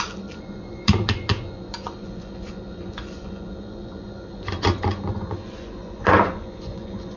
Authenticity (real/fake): fake